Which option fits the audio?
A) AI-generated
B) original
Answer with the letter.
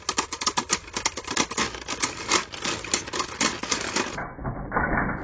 B